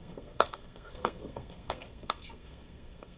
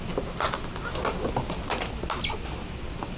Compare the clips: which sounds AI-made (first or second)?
first